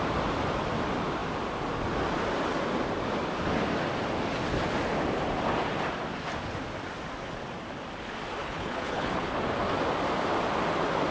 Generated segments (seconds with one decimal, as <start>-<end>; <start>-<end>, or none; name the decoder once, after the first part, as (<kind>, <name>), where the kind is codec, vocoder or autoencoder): 8.4-9.4 (codec, HILCodec)